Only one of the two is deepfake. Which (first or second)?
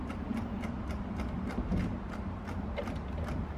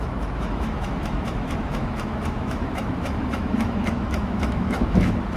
second